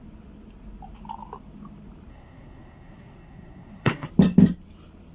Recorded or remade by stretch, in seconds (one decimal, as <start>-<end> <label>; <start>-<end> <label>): 0.0-2.1 recorded; 2.1-4.1 remade; 4.1-5.1 recorded